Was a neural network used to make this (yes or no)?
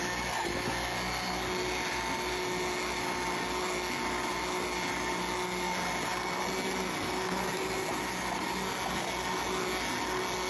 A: no